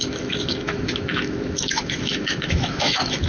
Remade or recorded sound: remade